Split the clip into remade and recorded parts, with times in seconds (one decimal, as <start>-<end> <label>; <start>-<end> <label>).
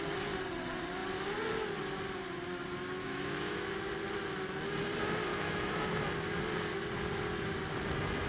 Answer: 0.0-3.0 recorded; 3.0-3.7 remade; 3.7-5.3 recorded; 5.3-6.0 remade; 6.0-8.3 recorded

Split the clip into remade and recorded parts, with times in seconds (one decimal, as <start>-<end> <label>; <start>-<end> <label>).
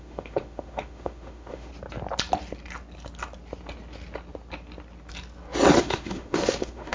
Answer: 0.0-1.7 remade; 1.7-5.8 recorded; 5.8-6.9 remade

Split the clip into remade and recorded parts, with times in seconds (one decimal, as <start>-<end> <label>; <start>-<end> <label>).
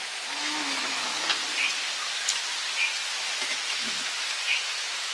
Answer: 0.0-1.4 remade; 1.4-3.7 recorded; 3.7-5.1 remade